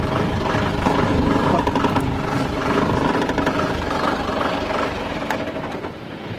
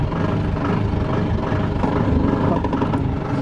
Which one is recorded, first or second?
second